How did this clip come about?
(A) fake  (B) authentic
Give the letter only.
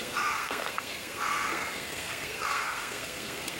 A